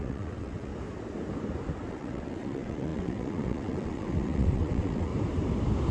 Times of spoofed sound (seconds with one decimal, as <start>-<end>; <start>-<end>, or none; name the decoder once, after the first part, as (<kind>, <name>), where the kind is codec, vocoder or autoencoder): 0.0-0.7 (vocoder, WaveNeXt); 1.9-5.1